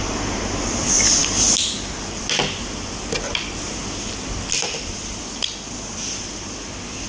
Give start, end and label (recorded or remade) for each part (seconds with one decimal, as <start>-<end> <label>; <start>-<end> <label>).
0.0-7.1 recorded